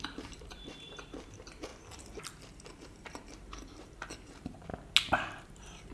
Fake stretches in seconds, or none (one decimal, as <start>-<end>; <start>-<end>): 0.0-1.7; 2.7-4.7; 5.3-5.9